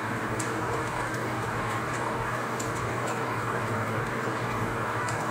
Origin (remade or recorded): remade